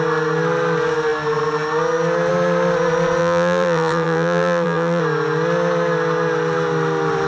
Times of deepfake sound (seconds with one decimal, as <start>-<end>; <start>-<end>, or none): 3.2-5.0